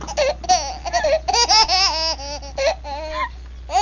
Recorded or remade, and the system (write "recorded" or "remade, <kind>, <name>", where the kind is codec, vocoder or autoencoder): recorded